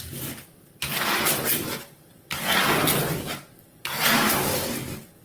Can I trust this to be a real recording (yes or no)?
yes